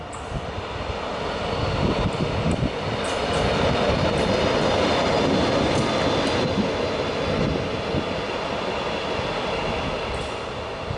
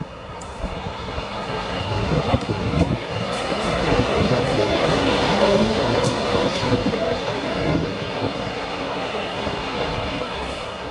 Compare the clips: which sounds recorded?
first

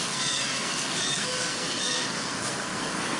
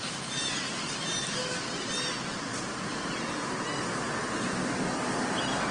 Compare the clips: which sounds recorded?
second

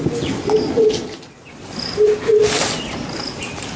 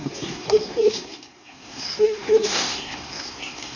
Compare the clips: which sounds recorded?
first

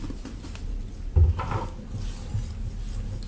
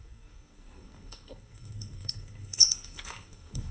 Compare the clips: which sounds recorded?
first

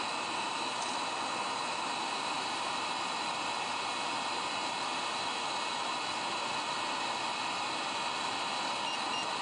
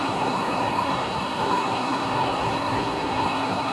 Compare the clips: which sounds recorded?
first